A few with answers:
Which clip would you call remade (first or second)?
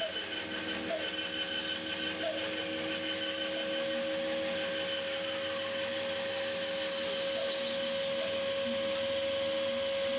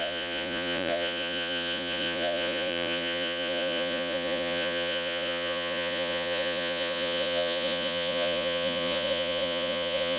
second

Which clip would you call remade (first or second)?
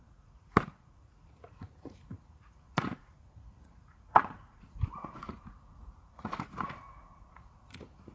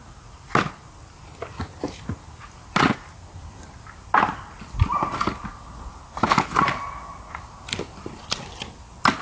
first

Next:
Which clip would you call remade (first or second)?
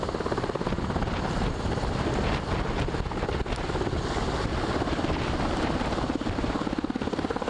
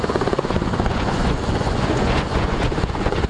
second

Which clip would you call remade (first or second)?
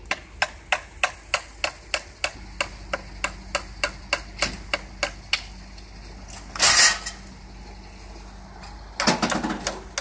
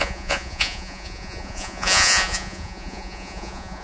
second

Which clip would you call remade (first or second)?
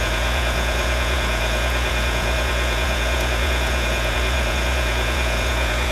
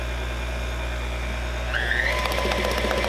first